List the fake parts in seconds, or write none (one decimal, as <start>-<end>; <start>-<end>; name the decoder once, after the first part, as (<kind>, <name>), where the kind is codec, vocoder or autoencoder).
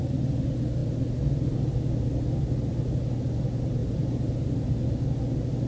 3.8-4.7 (vocoder, BigVGAN v2)